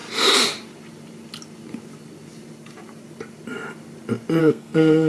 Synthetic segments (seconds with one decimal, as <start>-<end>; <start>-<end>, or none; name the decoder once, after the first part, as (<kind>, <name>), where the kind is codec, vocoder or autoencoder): 4.4-5.1 (codec, SNAC)